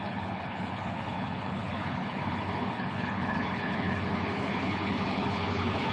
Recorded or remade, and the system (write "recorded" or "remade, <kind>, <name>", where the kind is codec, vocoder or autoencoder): remade, codec, HILCodec